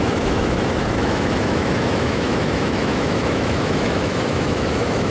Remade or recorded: remade